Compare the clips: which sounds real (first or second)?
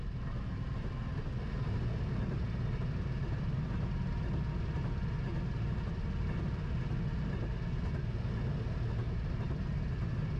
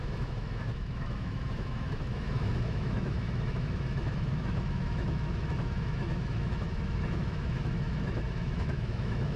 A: first